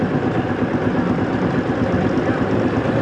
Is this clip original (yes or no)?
yes